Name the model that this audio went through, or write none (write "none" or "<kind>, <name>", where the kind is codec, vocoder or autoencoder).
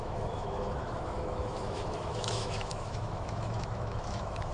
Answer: autoencoder, DAC-VAE